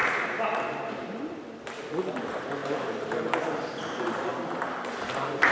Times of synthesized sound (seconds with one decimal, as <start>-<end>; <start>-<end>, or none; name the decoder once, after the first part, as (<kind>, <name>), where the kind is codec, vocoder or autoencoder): 2.6-3.7 (vocoder, BigVGAN v2)